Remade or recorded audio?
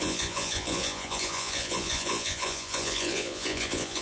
remade